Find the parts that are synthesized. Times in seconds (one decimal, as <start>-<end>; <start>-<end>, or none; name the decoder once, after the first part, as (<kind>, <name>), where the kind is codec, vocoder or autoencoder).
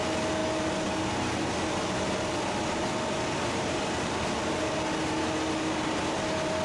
none